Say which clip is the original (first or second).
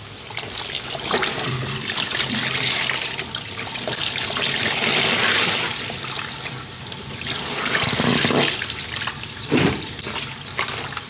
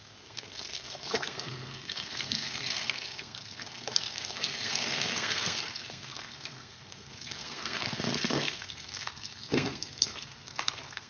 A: first